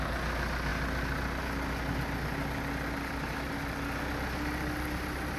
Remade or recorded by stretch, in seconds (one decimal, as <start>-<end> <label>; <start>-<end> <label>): 0.0-5.4 recorded